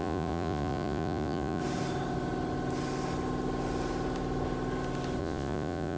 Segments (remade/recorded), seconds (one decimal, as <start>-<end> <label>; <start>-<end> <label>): 0.0-1.6 remade; 1.6-5.2 recorded; 5.2-6.0 remade